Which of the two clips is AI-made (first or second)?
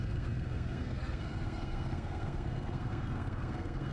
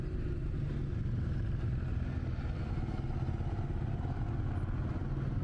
first